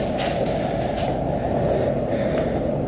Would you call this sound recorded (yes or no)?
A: yes